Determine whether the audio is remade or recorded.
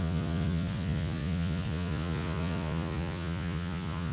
remade